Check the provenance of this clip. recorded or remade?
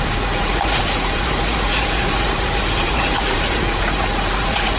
remade